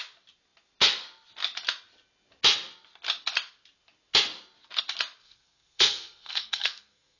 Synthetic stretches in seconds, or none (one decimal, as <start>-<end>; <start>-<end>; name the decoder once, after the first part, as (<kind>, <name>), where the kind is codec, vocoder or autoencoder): 5.2-7.2 (codec, SNAC)